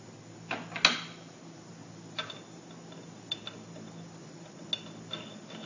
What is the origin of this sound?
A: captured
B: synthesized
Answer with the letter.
A